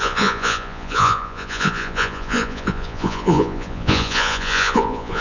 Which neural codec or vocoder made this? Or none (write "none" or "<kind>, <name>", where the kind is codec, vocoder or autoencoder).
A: vocoder, Vocos